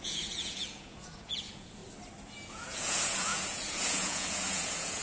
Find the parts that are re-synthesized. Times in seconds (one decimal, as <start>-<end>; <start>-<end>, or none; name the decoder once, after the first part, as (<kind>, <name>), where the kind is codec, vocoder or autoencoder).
0.0-1.8 (vocoder, Vocos); 2.5-5.0